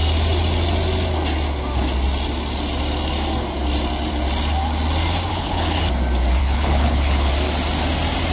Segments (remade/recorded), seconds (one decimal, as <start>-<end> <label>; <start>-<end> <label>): 0.0-5.3 recorded; 5.3-5.8 remade; 5.8-6.4 recorded; 6.4-7.3 remade; 7.3-8.3 recorded